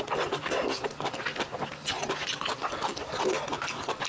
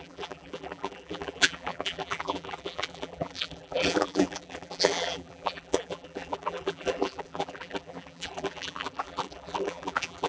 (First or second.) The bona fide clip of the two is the first